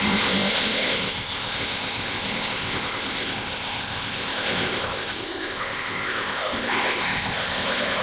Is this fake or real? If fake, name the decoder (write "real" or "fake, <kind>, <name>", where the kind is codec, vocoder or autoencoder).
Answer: fake, codec, ZipCodec